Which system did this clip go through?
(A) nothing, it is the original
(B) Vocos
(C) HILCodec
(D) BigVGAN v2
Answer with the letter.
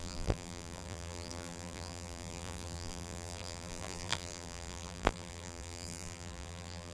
D